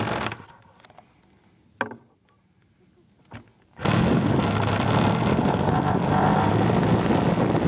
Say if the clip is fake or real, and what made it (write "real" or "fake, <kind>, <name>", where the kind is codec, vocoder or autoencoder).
real